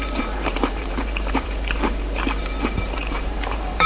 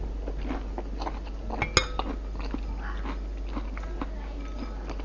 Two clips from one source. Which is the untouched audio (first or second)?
second